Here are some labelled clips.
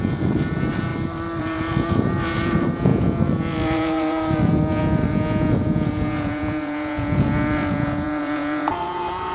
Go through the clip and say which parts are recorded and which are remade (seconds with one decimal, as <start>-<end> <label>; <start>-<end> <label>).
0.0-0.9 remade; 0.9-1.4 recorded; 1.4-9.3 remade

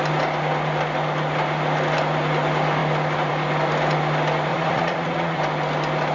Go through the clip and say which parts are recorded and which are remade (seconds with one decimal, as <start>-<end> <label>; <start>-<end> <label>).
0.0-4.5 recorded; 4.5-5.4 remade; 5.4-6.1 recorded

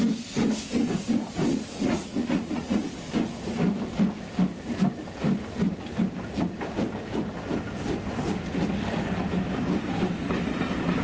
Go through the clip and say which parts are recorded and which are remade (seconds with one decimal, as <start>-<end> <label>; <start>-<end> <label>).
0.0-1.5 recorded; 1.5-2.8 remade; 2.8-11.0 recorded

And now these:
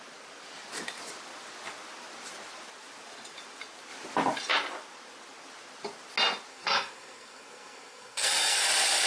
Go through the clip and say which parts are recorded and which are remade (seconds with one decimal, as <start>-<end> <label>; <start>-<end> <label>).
0.0-6.5 recorded; 6.5-8.6 remade; 8.6-9.1 recorded